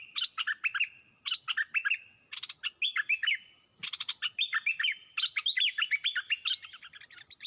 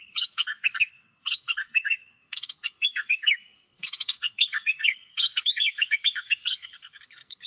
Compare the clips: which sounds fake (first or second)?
second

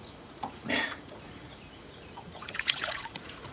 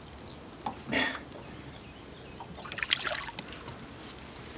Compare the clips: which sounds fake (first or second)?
first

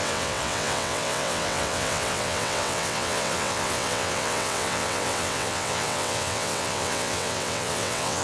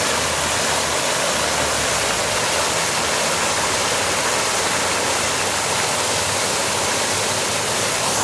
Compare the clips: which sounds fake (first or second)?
first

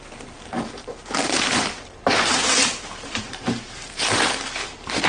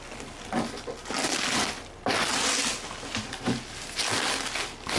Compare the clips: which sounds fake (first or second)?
first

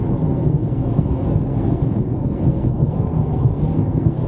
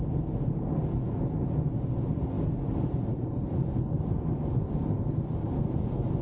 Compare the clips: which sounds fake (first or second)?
first